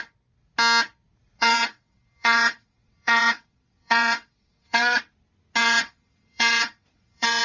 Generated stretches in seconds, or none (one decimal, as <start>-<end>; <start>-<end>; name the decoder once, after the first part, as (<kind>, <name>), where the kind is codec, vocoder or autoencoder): 1.4-5.0 (vocoder, WaveNeXt); 5.6-7.4